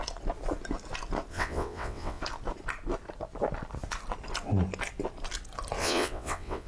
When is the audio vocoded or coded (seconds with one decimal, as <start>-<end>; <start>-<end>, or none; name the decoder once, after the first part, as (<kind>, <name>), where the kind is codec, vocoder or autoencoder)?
1.3-2.2 (vocoder, WaveNeXt); 5.8-6.7